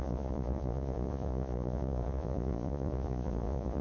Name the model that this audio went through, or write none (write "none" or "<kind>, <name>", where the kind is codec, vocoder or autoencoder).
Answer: vocoder, Vocos